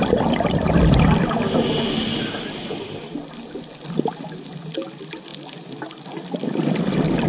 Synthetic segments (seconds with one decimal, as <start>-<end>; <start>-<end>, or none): none

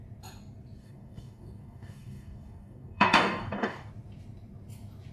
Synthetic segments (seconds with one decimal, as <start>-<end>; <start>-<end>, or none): 0.8-3.9

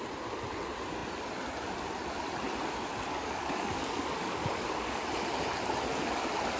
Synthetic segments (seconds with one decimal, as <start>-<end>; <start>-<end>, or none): 3.1-5.0

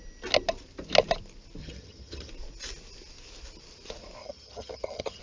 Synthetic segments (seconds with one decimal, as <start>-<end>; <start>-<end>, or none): 1.6-2.3; 4.2-5.2